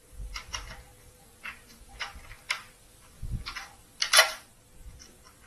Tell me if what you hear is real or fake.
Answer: fake